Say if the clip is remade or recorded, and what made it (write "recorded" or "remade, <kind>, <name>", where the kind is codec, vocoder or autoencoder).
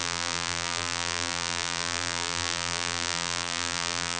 remade, vocoder, BigVGAN v2